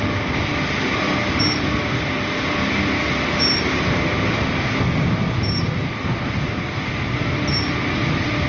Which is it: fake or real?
real